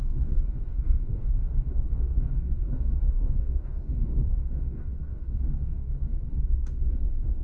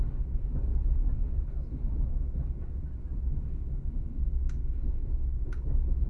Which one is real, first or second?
second